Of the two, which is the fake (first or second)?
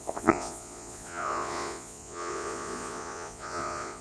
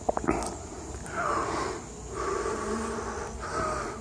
first